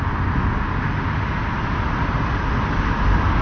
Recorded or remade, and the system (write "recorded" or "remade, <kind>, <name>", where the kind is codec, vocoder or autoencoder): recorded